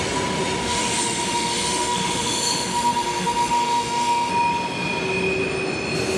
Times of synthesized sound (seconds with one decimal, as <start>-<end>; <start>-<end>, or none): 0.6-4.3